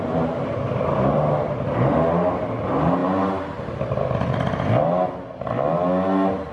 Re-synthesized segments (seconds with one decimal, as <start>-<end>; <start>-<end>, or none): none